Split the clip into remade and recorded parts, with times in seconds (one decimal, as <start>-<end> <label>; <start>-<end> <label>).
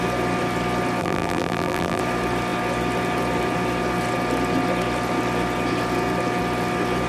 0.0-1.0 recorded; 1.0-2.0 remade; 2.0-7.1 recorded